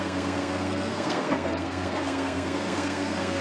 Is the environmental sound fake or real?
fake